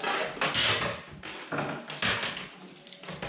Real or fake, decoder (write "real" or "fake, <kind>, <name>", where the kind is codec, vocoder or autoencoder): real